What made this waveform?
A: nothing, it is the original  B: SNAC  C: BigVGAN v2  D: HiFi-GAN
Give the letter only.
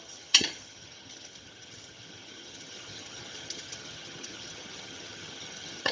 D